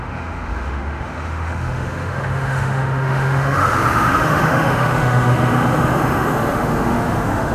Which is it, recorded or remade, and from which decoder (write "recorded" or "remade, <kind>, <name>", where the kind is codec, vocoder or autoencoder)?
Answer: remade, autoencoder, DAC-VAE